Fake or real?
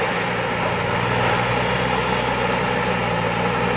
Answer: real